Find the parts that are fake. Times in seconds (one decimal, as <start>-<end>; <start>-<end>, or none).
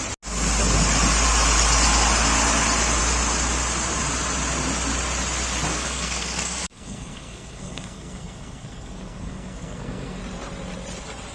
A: 5.7-10.2